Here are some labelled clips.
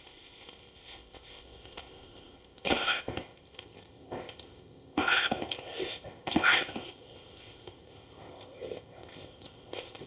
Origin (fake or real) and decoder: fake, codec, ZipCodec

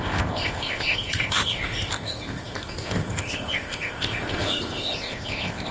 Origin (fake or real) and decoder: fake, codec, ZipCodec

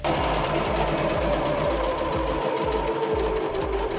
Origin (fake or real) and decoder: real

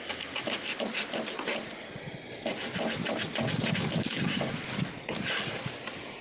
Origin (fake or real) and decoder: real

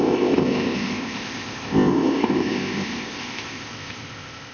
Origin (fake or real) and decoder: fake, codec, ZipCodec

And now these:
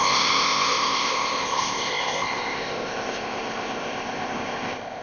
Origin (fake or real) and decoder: fake, codec, ZipCodec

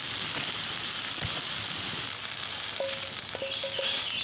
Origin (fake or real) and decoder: real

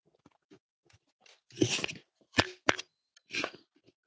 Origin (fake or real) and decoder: real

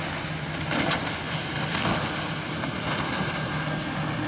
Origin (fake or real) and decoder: real